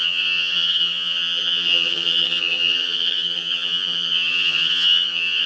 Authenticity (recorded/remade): remade